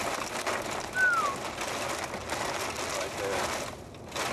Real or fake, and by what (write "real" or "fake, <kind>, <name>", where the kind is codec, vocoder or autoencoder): real